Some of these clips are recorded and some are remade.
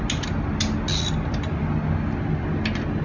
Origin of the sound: recorded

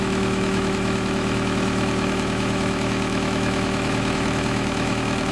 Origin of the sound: remade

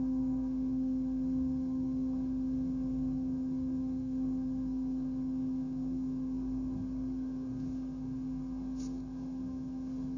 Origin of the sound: remade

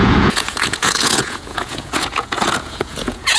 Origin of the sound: remade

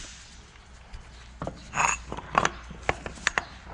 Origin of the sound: recorded